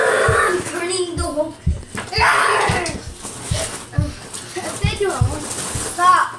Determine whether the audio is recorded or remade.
recorded